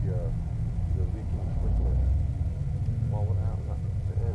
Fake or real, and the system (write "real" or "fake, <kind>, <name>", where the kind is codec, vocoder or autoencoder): real